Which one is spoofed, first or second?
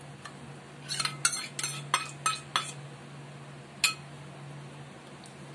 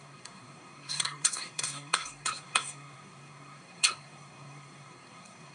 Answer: second